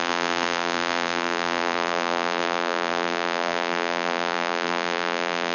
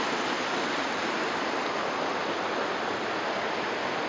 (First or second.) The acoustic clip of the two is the second